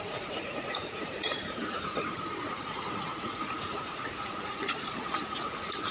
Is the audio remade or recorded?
remade